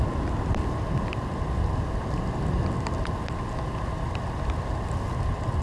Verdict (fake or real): real